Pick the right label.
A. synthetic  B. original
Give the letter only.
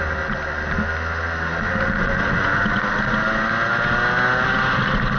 B